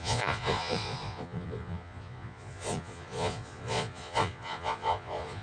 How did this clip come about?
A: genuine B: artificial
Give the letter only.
B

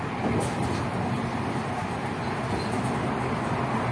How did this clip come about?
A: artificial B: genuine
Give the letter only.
B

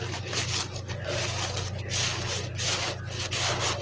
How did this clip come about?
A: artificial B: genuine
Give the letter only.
B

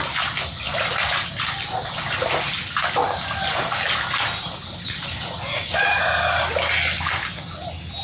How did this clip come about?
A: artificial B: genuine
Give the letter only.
B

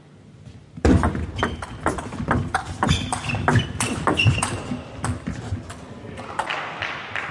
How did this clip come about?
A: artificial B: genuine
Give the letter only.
B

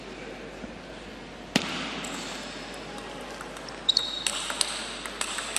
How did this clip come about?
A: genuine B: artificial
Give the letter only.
A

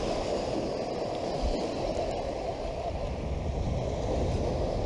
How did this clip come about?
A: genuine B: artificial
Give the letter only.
A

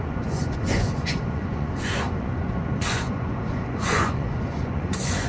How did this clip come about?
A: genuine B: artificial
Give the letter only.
B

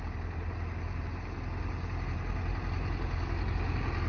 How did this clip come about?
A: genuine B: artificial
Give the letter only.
A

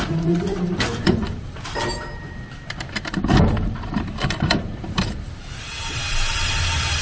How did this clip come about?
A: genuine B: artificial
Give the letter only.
B